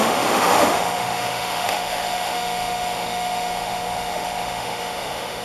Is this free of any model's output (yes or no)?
no